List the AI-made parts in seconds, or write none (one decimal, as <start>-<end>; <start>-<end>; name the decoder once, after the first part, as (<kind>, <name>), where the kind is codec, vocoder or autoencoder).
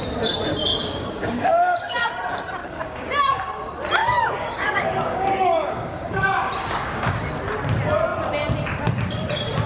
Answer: 0.7-2.1 (codec, DAC); 2.6-3.4; 4.0-7.4